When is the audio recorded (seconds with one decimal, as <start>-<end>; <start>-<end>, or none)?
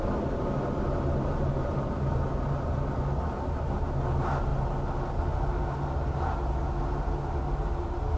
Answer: 0.0-8.2